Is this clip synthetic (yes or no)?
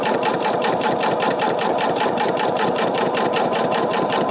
yes